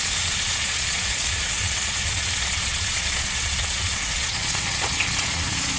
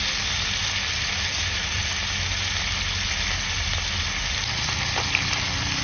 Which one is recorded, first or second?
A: second